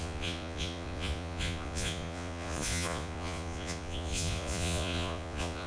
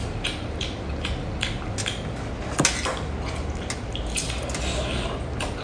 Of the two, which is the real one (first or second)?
second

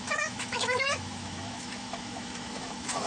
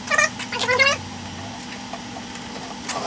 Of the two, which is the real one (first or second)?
second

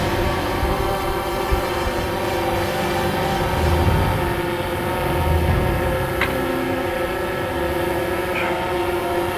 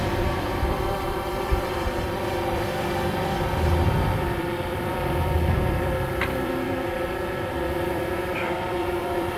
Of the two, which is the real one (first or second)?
first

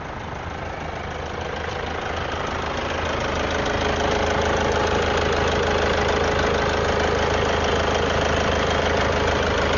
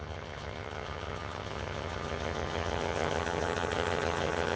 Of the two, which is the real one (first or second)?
first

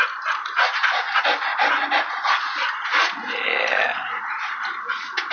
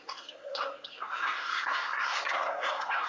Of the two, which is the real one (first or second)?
first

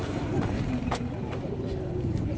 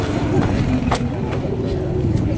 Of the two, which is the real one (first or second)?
second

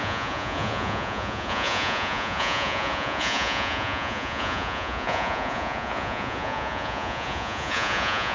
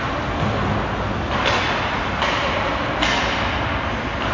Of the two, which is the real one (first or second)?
second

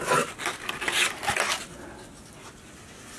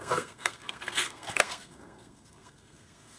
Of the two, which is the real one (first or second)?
first